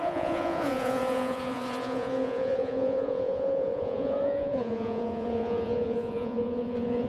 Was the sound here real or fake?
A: fake